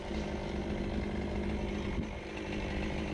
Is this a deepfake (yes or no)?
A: no